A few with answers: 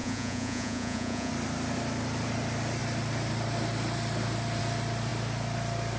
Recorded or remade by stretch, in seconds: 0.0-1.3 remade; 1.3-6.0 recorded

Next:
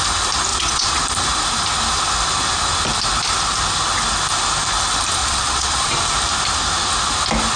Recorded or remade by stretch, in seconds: 0.0-0.5 recorded; 0.5-1.0 remade; 1.0-5.2 recorded; 5.2-5.9 remade; 5.9-7.6 recorded